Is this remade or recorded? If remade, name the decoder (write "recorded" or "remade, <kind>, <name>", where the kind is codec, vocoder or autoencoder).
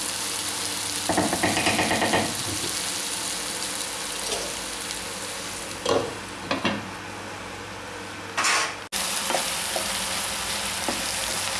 recorded